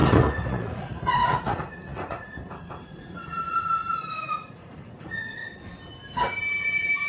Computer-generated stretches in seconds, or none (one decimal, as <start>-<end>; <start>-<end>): 0.0-5.4; 6.6-7.1